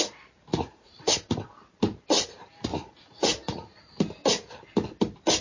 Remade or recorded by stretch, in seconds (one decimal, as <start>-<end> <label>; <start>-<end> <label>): 0.0-0.5 recorded; 0.5-1.1 remade; 1.1-2.7 recorded; 2.7-3.8 remade; 3.8-5.4 recorded